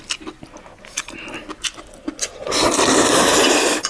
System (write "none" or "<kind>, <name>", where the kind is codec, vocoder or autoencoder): none